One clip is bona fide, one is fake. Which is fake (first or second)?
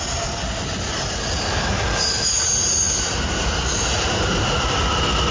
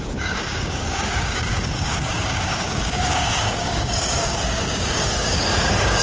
second